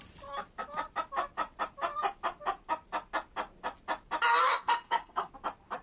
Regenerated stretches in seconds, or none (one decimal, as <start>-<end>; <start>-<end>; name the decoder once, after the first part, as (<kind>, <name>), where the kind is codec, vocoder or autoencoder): 4.4-5.3 (codec, SNAC)